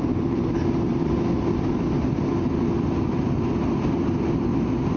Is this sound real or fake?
real